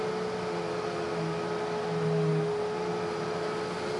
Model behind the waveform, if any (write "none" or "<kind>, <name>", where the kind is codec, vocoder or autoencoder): none